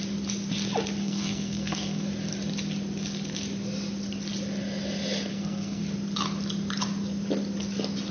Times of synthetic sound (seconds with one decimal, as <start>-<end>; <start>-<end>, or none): 1.0-2.1; 5.3-5.8